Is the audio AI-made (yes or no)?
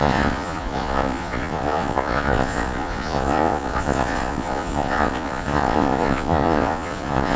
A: yes